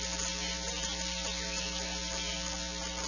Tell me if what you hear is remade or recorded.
recorded